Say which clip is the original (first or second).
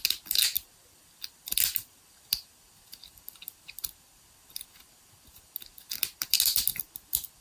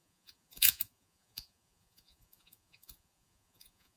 first